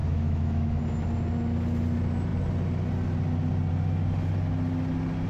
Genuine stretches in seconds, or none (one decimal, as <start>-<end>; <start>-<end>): 0.8-5.3

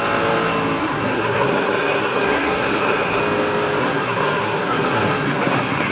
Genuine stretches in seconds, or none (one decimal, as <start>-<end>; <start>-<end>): 0.0-0.8; 3.2-3.8

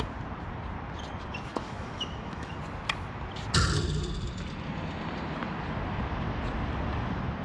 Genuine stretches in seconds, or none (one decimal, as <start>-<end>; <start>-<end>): 0.0-1.5; 2.5-7.4

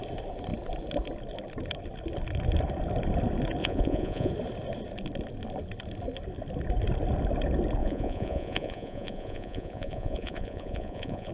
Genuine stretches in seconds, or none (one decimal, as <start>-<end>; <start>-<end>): 0.0-3.6; 4.3-7.8